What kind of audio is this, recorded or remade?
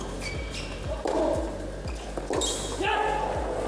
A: recorded